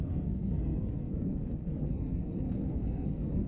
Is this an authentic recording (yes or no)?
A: no